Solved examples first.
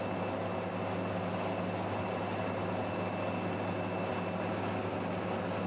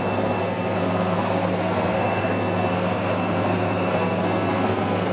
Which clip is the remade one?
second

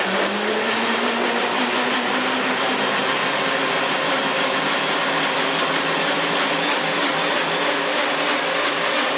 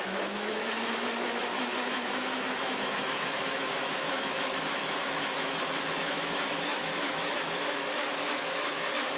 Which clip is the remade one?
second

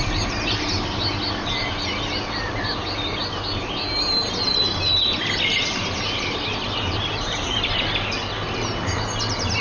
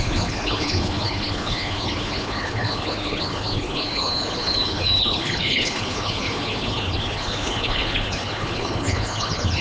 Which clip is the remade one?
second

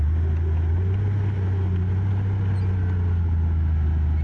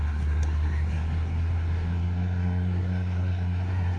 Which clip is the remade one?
second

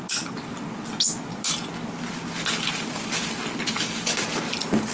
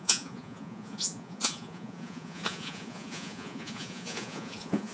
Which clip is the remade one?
second